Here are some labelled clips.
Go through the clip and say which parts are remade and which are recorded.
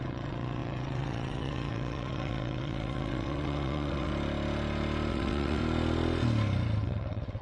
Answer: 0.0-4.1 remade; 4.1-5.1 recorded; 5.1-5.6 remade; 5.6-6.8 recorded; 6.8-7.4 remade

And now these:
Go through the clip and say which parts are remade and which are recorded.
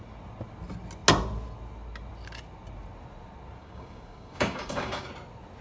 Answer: 0.0-3.6 recorded; 3.6-5.1 remade; 5.1-5.6 recorded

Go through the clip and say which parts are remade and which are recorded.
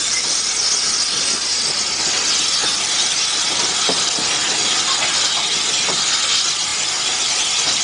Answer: 0.0-2.7 recorded; 2.7-4.1 remade; 4.1-7.8 recorded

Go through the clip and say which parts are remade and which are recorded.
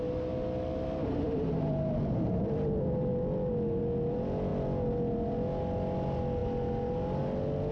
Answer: 0.0-1.0 recorded; 1.0-2.4 remade; 2.4-7.7 recorded